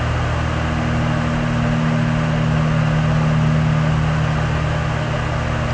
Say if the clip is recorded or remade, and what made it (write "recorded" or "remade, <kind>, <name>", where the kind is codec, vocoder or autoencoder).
recorded